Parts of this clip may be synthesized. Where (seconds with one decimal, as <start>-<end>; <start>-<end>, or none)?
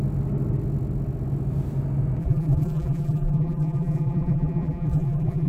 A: 2.2-5.5